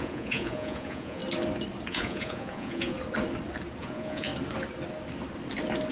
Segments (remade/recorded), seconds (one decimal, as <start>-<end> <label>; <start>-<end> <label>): 0.0-1.2 remade; 1.2-1.9 recorded; 1.9-2.9 remade; 2.9-3.8 recorded; 3.8-4.3 remade; 4.3-5.9 recorded